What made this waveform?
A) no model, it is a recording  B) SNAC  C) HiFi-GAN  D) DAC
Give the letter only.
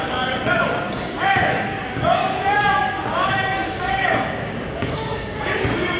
D